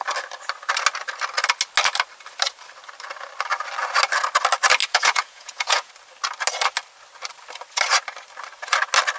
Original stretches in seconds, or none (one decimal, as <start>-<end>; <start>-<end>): 0.0-4.8; 5.9-9.2